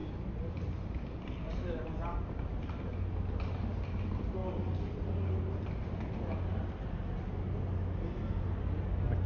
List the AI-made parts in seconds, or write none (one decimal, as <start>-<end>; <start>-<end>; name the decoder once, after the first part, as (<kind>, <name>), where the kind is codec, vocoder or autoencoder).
none